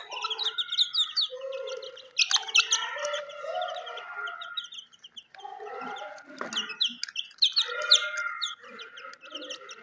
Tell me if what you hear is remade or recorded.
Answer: recorded